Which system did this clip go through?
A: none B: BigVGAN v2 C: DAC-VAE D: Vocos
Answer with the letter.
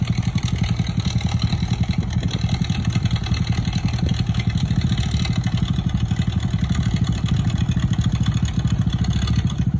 A